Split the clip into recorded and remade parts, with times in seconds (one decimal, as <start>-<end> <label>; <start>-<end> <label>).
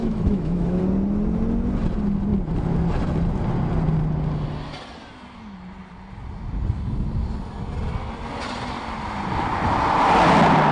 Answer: 0.0-0.8 remade; 0.8-10.7 recorded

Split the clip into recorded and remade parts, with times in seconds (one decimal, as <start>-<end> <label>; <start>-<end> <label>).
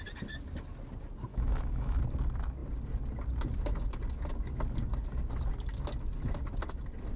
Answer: 0.0-1.3 recorded; 1.3-2.0 remade; 2.0-7.2 recorded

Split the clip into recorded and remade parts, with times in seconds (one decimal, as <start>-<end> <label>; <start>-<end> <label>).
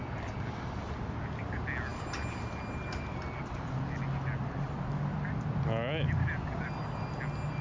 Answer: 0.0-7.6 recorded